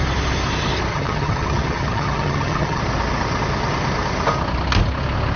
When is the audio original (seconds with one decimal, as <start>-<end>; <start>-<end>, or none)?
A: 0.0-0.9; 2.8-5.4